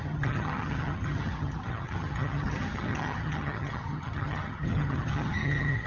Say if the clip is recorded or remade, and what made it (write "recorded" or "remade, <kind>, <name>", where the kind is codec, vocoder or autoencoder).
remade, vocoder, HiFi-GAN